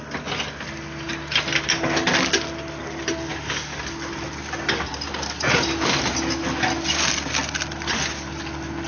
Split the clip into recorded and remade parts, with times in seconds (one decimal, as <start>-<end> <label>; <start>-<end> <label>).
0.0-8.9 recorded